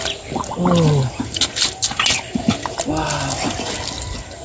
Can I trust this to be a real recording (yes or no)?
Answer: yes